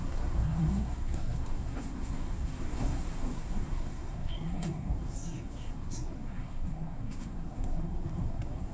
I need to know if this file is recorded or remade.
remade